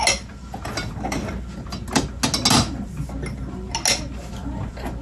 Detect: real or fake real